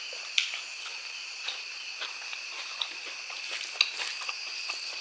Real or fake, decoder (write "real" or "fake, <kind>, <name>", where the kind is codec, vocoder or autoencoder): real